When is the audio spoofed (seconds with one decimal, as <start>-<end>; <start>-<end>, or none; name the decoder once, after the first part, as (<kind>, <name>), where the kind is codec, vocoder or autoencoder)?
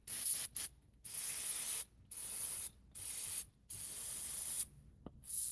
0.6-1.6 (codec, SNAC); 4.9-5.5